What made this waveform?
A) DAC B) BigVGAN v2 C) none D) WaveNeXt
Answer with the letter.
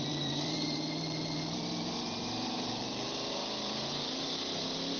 B